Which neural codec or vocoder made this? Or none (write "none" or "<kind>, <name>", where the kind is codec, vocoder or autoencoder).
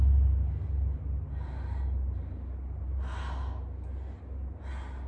none